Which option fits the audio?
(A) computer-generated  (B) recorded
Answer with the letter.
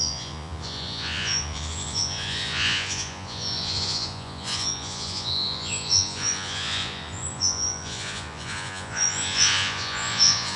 A